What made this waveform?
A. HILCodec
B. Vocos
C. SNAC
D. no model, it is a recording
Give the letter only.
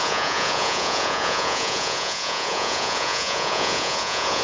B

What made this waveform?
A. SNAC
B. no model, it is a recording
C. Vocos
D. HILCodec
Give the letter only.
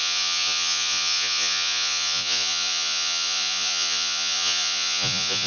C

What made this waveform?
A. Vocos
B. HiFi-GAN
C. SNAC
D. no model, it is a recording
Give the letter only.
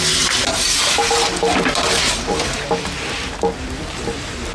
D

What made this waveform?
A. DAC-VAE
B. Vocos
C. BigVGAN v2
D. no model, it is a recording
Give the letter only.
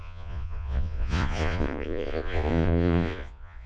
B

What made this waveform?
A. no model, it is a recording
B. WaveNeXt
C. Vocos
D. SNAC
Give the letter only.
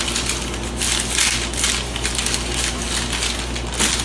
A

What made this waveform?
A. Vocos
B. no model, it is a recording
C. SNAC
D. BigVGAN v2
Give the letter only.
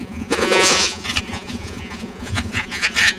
A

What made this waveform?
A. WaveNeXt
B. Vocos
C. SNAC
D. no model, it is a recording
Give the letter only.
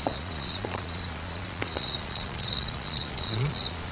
B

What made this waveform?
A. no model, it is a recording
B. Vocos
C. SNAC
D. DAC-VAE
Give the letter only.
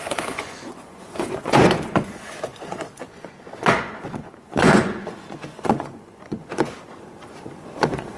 B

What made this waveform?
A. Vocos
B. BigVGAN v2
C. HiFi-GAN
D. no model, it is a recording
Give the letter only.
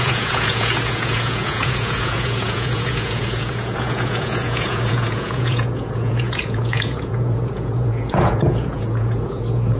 A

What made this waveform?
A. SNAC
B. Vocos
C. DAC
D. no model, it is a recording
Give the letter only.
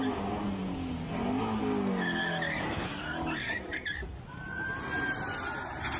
D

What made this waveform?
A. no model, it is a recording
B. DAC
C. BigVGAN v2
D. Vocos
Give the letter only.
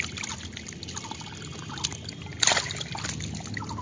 A